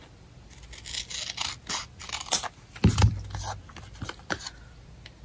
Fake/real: real